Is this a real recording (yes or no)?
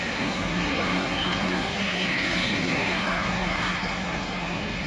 no